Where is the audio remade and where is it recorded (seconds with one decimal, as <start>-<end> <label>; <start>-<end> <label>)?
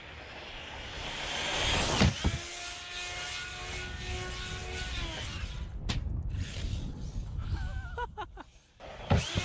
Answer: 0.0-9.4 recorded